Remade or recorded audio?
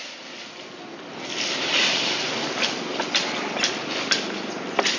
recorded